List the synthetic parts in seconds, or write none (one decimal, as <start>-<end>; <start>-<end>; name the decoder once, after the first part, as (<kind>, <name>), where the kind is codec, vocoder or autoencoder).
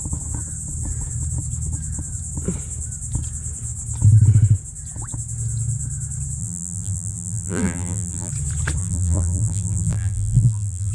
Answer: 6.4-8.3 (vocoder, BigVGAN v2); 8.8-10.9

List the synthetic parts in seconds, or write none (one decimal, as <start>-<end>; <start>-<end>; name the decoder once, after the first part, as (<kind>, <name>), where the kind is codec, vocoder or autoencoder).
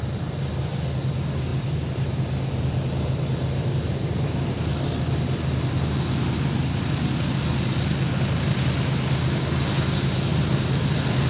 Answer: none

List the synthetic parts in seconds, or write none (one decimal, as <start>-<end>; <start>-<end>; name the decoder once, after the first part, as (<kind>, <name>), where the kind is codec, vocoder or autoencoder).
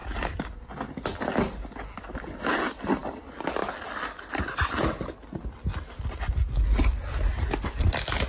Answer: 0.0-0.9 (vocoder, BigVGAN v2)